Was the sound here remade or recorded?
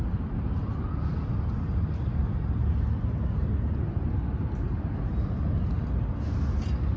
recorded